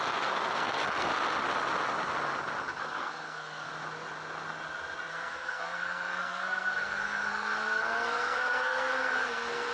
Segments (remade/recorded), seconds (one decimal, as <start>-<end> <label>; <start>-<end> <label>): 0.0-1.1 remade; 1.1-2.8 recorded; 2.8-3.7 remade; 3.7-5.1 recorded; 5.1-9.7 remade